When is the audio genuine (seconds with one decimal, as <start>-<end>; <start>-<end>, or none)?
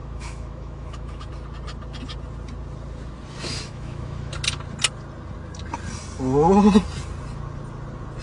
1.3-3.4; 4.3-8.2